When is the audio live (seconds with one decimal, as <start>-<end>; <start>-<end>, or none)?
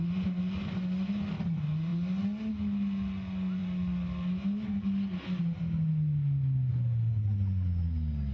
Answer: 0.0-8.3